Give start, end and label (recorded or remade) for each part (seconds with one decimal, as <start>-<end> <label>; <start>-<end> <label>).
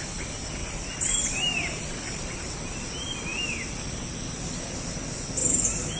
0.0-0.6 recorded; 0.6-2.5 remade; 2.5-6.0 recorded